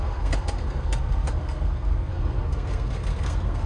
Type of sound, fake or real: fake